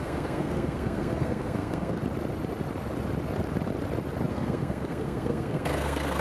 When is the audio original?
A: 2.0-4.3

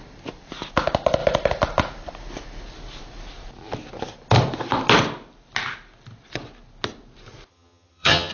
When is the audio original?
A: 0.0-7.5